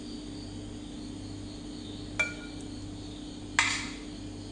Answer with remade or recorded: recorded